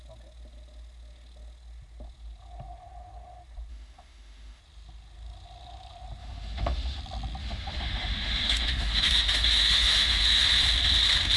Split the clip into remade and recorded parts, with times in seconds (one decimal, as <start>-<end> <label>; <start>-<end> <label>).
0.0-3.7 recorded; 3.7-4.6 remade; 4.6-6.2 recorded; 6.2-7.0 remade; 7.0-7.4 recorded; 7.4-10.6 remade; 10.6-11.4 recorded